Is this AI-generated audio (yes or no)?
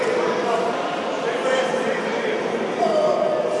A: yes